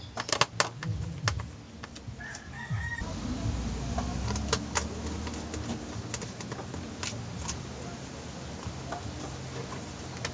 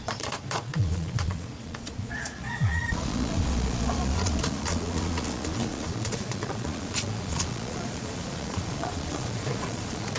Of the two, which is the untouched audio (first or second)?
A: first